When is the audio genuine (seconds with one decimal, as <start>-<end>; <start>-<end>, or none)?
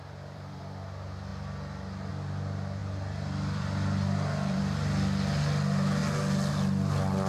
0.6-2.8; 4.6-7.3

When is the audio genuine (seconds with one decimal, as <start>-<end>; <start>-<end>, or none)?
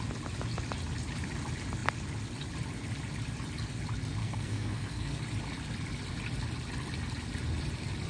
0.0-4.2; 5.2-8.1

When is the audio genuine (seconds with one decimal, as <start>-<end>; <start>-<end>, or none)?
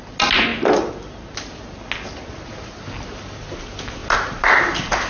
0.0-5.1